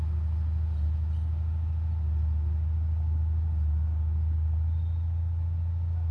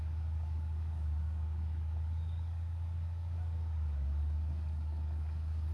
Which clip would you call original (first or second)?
first